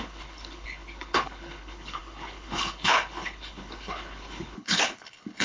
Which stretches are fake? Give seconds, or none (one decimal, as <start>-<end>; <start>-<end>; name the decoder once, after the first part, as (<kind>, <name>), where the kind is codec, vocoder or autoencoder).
0.0-5.4 (codec, HILCodec)